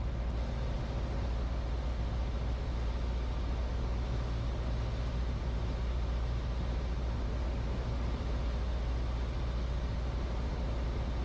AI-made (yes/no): no